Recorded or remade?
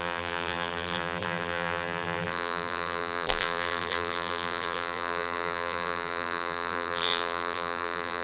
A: remade